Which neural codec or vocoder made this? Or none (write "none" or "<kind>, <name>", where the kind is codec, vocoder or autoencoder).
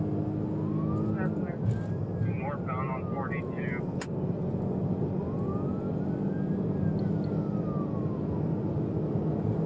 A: none